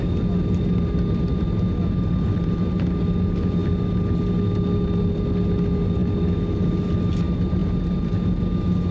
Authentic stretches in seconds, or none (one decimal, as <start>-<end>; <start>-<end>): 0.0-8.9